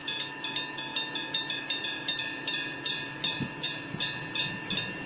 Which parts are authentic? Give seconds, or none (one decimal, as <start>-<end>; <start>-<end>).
0.0-5.1